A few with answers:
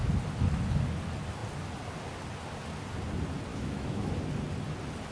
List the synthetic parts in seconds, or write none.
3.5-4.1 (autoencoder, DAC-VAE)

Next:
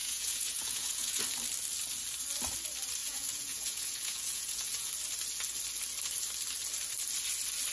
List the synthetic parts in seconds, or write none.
0.0-1.2 (vocoder, Vocos); 3.0-4.9

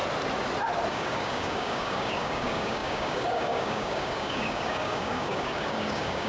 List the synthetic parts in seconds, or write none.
0.9-6.3 (codec, DAC)

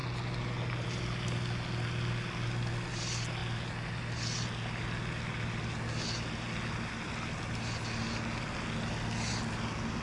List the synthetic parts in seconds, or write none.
none